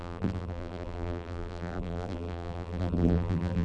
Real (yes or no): no